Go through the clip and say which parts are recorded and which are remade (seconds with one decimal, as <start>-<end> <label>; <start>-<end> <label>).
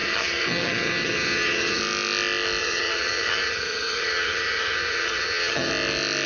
0.0-1.8 remade; 1.8-2.6 recorded; 2.6-5.7 remade; 5.7-6.3 recorded